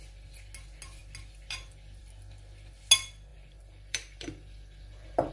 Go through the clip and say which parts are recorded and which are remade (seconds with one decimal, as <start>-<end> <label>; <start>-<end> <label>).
0.0-3.3 recorded; 3.3-5.3 remade